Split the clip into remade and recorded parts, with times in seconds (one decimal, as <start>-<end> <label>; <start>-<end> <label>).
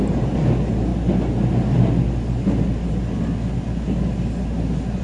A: 0.0-5.0 recorded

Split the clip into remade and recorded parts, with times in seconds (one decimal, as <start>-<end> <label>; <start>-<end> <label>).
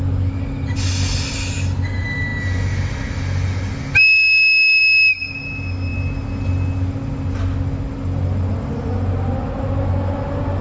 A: 0.0-10.6 recorded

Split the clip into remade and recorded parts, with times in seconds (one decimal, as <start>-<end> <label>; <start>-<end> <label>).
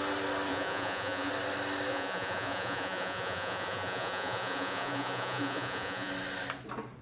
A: 0.0-0.5 recorded; 0.5-1.3 remade; 1.3-1.9 recorded; 1.9-6.1 remade; 6.1-7.0 recorded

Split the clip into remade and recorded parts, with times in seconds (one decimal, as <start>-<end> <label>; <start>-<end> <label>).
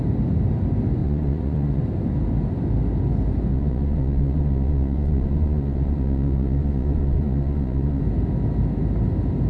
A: 0.0-1.0 recorded; 1.0-1.8 remade; 1.8-3.5 recorded; 3.5-8.0 remade; 8.0-9.5 recorded